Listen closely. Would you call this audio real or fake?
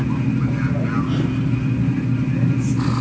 real